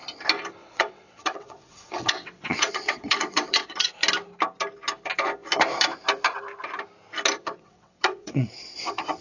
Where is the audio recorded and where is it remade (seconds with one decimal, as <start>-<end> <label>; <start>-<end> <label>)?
0.0-0.6 recorded; 0.6-3.9 remade; 3.9-7.4 recorded; 7.4-9.2 remade